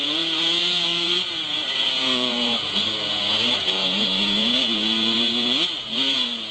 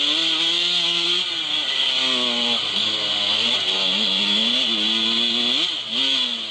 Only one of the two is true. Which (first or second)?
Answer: second